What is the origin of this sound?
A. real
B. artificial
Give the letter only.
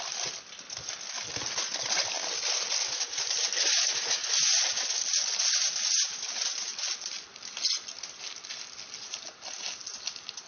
A